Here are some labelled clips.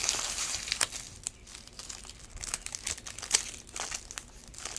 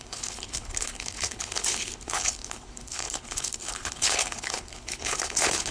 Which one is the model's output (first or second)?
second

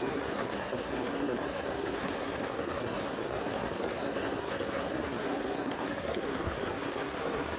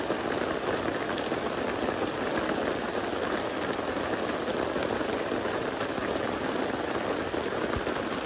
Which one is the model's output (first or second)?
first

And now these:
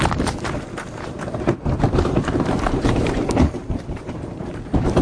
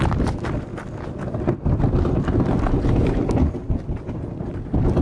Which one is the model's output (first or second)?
first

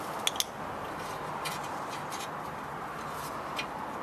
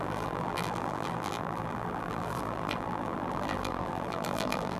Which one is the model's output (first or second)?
second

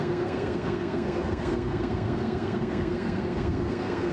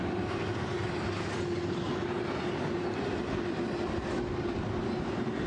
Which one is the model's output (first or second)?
first